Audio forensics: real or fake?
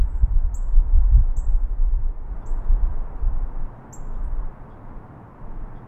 real